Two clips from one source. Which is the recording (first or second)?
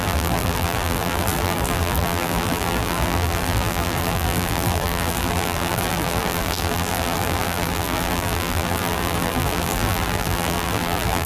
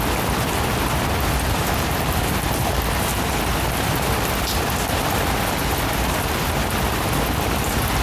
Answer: second